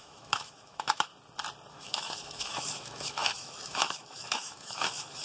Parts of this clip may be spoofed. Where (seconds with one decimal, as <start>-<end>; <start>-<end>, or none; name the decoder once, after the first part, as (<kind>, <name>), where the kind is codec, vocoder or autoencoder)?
0.0-1.1 (autoencoder, DAC-VAE); 1.7-5.2